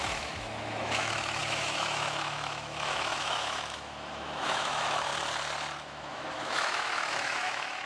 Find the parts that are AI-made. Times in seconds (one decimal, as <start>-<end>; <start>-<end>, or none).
0.0-5.1; 5.8-7.9